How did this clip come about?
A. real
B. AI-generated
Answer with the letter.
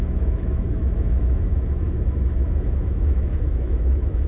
B